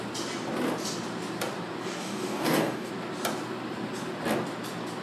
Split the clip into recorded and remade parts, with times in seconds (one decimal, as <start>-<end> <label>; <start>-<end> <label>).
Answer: 0.0-1.8 recorded; 1.8-2.9 remade; 2.9-5.0 recorded